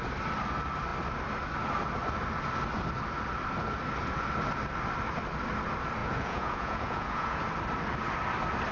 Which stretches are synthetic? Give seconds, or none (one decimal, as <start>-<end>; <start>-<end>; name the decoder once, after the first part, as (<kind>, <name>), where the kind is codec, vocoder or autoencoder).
6.0-7.4 (vocoder, Vocos)